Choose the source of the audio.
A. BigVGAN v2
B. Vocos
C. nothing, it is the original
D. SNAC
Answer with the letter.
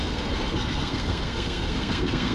D